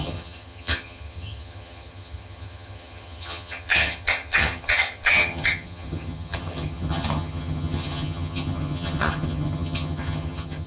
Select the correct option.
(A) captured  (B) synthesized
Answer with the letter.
B